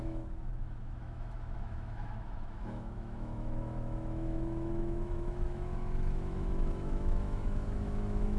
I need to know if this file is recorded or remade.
remade